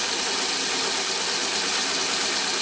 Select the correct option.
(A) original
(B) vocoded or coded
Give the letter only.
A